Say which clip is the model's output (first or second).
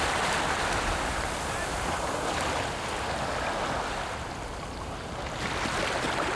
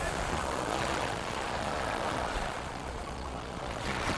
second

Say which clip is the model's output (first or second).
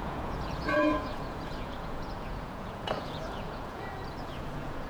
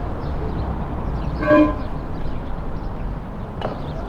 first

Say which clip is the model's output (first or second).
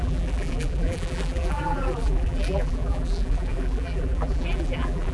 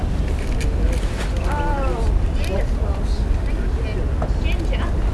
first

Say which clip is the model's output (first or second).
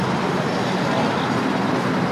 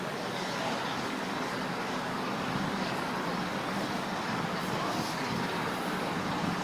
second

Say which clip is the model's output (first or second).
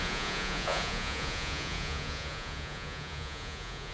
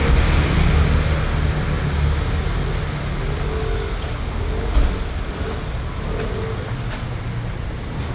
first